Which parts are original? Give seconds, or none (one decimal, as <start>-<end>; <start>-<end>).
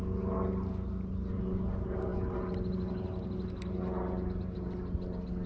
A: 0.0-5.5